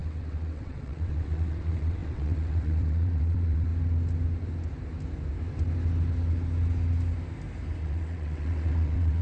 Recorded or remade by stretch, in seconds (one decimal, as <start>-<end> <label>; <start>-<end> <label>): 0.0-3.7 remade; 3.7-7.8 recorded; 7.8-9.2 remade